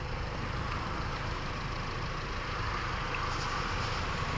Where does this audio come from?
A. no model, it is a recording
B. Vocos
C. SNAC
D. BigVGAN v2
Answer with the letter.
D